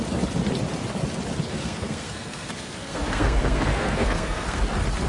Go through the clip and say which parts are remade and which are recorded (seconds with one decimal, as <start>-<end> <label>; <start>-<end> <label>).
0.0-1.5 recorded; 1.5-4.6 remade; 4.6-5.1 recorded